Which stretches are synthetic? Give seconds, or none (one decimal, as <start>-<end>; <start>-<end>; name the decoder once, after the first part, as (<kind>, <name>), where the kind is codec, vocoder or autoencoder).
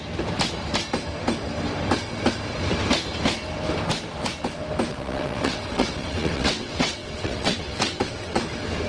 4.9-8.4 (vocoder, WaveNeXt)